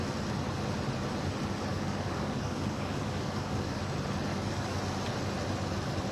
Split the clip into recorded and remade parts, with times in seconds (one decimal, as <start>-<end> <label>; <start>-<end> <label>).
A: 0.0-1.7 recorded; 1.7-3.8 remade; 3.8-4.3 recorded; 4.3-4.8 remade; 4.8-6.1 recorded